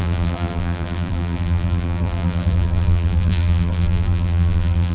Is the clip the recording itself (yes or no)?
no